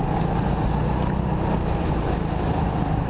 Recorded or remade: recorded